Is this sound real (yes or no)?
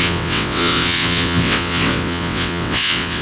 no